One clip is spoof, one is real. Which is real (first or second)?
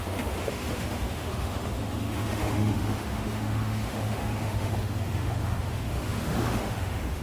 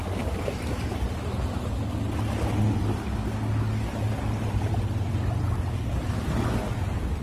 second